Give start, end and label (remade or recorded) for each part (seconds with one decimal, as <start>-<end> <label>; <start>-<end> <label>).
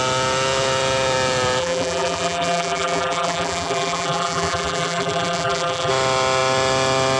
0.0-1.6 recorded; 1.6-5.9 remade; 5.9-7.2 recorded